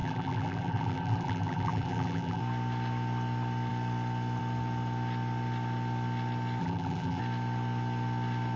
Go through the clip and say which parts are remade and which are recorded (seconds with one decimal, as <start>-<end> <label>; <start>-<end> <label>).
0.0-2.4 remade; 2.4-6.6 recorded; 6.6-7.2 remade; 7.2-8.6 recorded